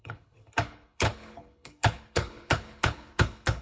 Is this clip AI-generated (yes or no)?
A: yes